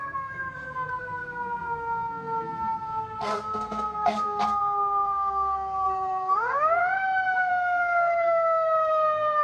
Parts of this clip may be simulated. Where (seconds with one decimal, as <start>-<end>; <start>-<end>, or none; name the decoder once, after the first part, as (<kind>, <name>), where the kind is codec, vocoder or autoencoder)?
0.0-6.8 (codec, SNAC); 7.5-9.4